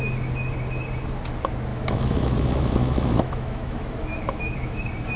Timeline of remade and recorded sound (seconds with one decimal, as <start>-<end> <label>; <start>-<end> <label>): 0.0-1.7 recorded; 1.7-4.8 remade; 4.8-5.2 recorded

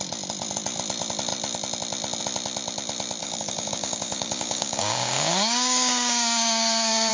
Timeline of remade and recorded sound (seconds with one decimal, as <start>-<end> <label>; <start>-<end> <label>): 0.0-3.2 recorded; 3.2-7.1 remade

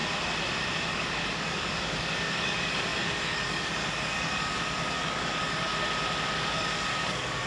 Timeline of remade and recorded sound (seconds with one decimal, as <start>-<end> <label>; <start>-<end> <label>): 0.0-0.9 recorded; 0.9-5.7 remade; 5.7-6.3 recorded; 6.3-7.5 remade

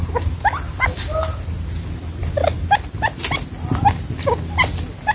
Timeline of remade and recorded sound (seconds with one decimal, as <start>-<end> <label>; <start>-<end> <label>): 0.0-5.1 recorded

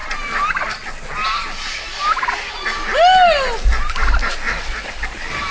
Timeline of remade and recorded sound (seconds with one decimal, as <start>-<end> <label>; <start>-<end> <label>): 0.0-5.5 recorded

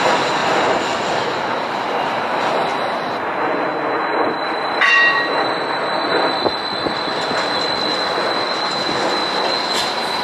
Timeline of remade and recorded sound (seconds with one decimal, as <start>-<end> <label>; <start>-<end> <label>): 0.0-2.7 remade; 2.7-3.2 recorded; 3.2-3.7 remade; 3.7-8.3 recorded; 8.3-9.2 remade; 9.2-9.7 recorded; 9.7-10.2 remade